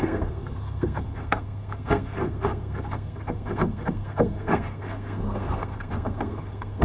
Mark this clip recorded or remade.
remade